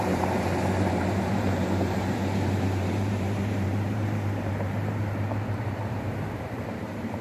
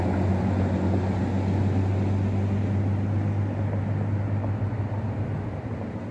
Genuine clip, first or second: second